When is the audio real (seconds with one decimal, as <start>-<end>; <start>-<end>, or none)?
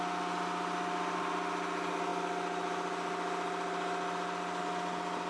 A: 0.0-5.3